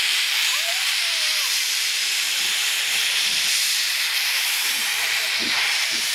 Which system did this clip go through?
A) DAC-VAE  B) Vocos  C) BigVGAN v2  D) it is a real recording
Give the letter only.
C